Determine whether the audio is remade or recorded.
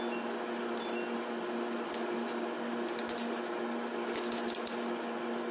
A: recorded